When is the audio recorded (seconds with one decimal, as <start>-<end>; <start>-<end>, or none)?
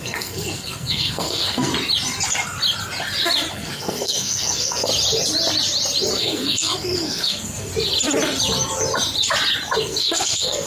1.7-3.5; 4.9-6.1; 7.7-9.8